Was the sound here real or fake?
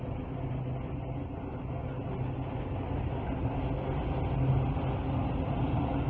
real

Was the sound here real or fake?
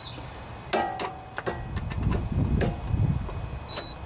real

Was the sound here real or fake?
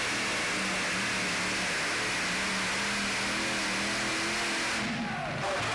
real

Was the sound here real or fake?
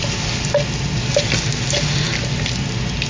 real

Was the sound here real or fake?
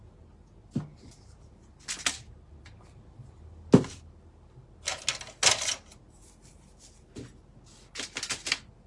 real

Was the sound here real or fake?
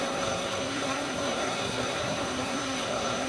fake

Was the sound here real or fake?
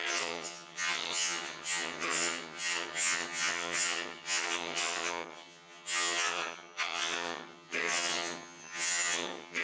fake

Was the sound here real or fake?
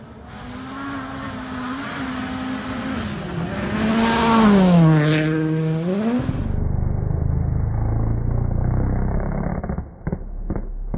real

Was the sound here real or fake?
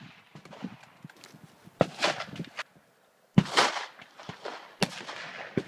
real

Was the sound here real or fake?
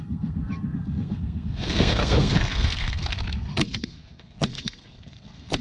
fake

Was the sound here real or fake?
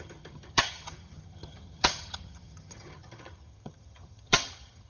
fake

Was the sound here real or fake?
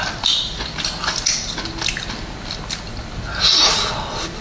real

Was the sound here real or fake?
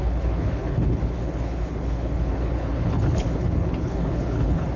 fake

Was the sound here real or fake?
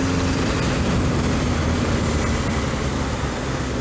real